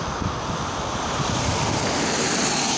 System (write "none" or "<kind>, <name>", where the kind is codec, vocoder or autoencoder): none